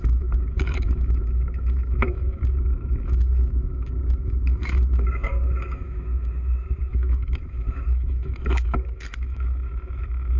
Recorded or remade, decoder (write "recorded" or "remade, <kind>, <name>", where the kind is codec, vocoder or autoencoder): remade, autoencoder, DAC-VAE